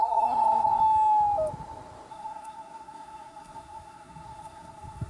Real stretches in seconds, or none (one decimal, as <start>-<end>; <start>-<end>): 0.8-2.1